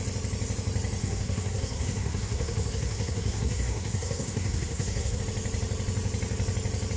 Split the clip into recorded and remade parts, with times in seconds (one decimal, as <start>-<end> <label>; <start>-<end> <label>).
0.0-1.0 recorded; 1.0-5.2 remade; 5.2-7.0 recorded